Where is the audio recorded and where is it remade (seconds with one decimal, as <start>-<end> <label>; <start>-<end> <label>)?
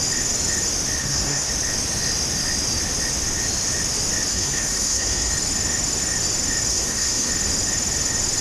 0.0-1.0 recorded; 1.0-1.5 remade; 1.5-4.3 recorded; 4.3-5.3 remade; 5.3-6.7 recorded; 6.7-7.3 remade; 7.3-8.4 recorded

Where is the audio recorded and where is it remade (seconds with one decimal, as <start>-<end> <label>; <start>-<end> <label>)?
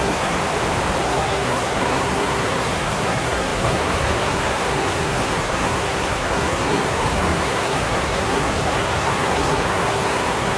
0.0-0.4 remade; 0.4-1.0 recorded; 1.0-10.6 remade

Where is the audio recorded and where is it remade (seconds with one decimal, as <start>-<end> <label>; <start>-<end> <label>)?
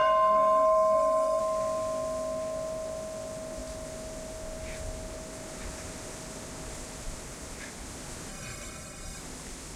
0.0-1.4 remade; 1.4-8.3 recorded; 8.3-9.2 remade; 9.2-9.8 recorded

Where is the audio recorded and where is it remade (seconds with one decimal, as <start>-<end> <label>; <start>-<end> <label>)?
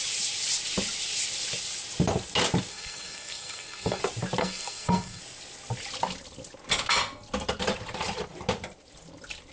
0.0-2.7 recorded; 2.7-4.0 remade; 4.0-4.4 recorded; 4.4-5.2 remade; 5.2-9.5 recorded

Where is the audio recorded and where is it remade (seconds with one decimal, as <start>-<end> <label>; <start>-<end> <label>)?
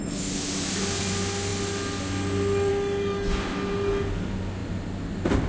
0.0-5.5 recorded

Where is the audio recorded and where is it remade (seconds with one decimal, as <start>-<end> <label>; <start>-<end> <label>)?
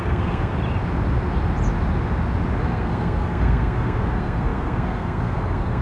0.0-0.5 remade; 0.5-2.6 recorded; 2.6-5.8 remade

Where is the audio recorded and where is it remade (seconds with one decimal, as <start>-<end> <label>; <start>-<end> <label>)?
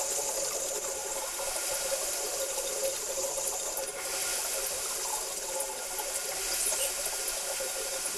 0.0-8.2 recorded